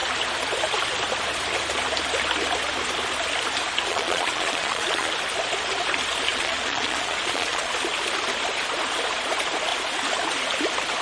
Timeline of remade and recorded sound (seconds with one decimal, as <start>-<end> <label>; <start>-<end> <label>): 0.0-3.9 recorded; 3.9-5.1 remade; 5.1-6.3 recorded; 6.3-7.7 remade; 7.7-11.0 recorded